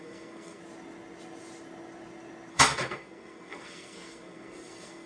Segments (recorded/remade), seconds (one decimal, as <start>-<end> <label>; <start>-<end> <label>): 0.0-0.6 remade; 0.6-2.5 recorded; 2.5-5.1 remade